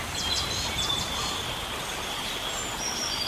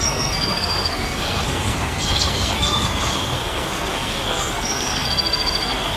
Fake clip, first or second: second